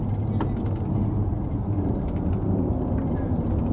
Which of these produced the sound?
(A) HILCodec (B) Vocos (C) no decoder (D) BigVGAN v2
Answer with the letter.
C